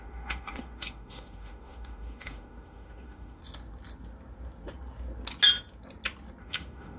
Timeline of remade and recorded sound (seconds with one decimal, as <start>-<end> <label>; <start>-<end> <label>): 0.0-3.4 remade; 3.4-6.4 recorded; 6.4-7.0 remade